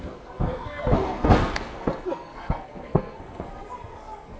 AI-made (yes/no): yes